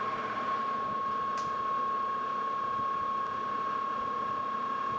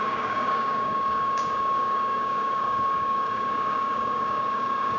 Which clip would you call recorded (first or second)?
first